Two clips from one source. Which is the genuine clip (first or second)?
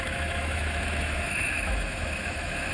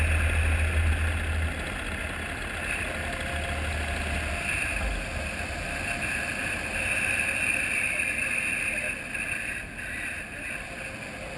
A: second